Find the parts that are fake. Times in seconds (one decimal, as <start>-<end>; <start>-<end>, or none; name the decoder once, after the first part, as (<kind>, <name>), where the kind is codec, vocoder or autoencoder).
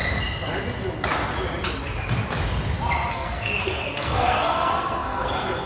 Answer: 3.1-5.7 (codec, SNAC)